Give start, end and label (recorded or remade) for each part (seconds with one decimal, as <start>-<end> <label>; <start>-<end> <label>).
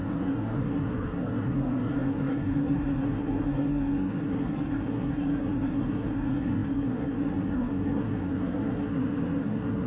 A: 0.0-9.9 remade